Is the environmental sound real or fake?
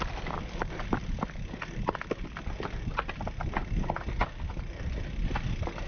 real